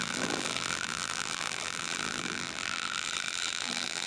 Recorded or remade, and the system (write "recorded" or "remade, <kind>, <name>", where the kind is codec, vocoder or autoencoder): remade, vocoder, BigVGAN v2